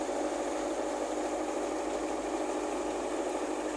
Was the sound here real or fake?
fake